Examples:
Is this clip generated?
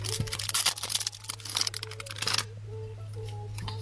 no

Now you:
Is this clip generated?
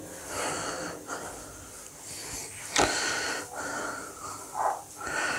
no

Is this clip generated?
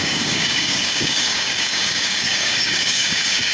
yes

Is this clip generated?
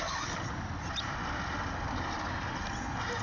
no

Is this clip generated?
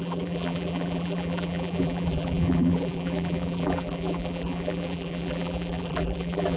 yes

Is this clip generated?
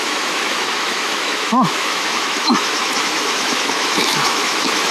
yes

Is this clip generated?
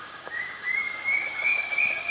yes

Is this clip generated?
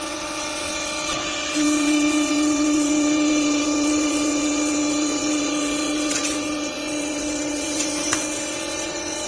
yes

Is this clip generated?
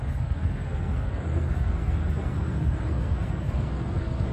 yes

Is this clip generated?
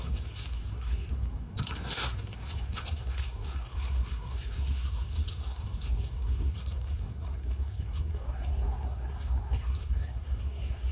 yes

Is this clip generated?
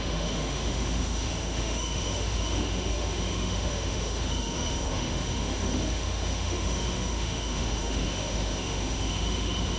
yes